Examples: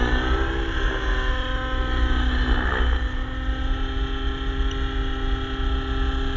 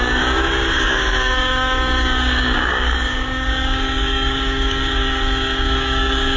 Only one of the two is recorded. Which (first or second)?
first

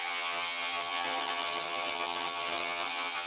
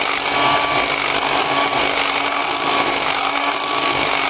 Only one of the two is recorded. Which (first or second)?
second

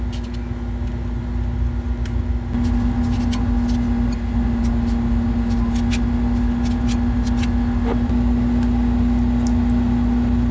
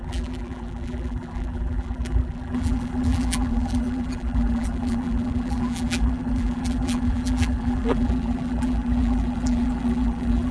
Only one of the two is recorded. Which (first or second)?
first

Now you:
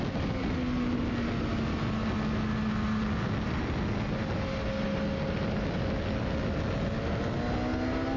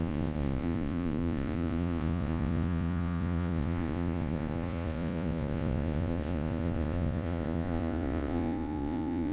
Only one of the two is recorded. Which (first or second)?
first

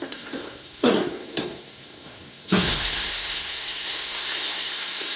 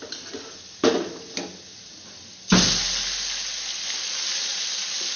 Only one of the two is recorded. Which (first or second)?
second